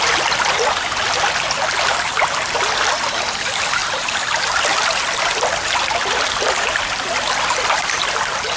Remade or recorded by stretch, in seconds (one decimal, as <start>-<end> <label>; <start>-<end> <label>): 0.0-3.8 recorded; 3.8-8.1 remade; 8.1-8.6 recorded